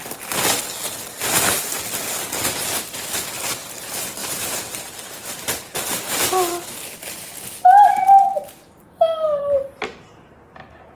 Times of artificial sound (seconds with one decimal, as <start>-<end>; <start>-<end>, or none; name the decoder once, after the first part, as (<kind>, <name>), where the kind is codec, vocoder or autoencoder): 4.2-6.2 (vocoder, BigVGAN v2); 8.3-10.1